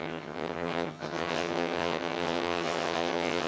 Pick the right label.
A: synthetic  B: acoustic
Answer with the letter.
A